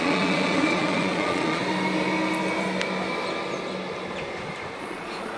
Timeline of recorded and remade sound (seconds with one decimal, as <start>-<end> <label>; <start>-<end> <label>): 0.0-1.6 remade; 1.6-4.8 recorded; 4.8-5.4 remade